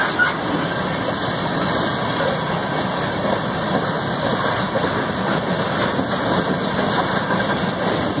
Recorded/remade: recorded